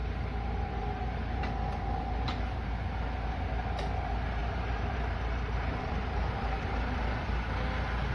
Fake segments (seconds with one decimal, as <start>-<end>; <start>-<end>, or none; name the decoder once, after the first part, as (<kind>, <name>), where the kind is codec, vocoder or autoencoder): 0.0-1.4 (vocoder, BigVGAN v2); 4.4-7.0